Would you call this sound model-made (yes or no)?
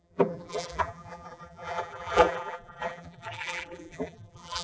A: yes